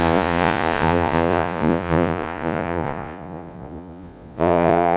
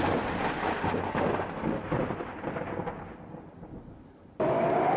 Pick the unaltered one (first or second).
second